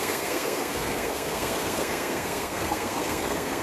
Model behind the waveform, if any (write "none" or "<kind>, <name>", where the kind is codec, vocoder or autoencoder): codec, SNAC